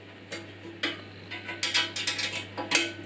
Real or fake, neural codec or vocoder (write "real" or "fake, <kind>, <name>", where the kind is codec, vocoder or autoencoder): real